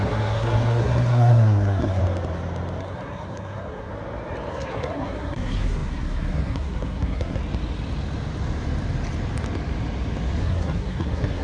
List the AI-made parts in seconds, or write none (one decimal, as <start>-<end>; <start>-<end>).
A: 0.0-2.0; 2.8-3.9; 4.5-7.4; 10.4-11.4